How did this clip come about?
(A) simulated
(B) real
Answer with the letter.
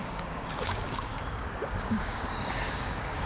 A